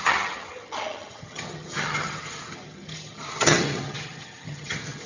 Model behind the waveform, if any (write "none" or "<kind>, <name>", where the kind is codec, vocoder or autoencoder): vocoder, HiFi-GAN